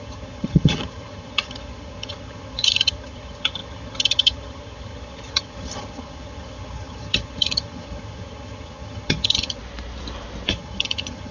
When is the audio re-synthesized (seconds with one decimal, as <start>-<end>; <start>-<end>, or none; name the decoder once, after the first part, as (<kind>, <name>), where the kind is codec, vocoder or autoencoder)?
0.0-9.6 (vocoder, HiFi-GAN); 10.5-11.3